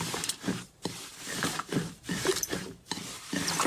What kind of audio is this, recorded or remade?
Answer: remade